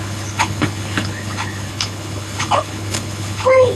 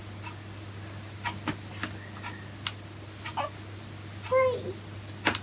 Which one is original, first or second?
second